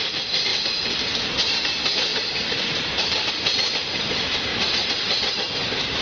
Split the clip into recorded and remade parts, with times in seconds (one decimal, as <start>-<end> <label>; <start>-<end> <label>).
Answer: 0.0-0.5 remade; 0.5-1.5 recorded; 1.5-6.0 remade